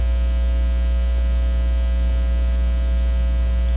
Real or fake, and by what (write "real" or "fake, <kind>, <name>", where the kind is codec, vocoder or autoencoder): real